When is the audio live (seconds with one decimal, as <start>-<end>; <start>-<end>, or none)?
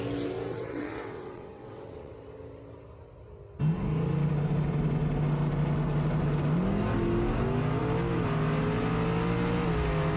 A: 0.0-0.5; 2.1-10.2